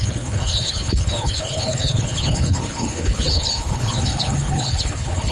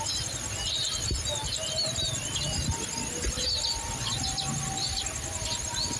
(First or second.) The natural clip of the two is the second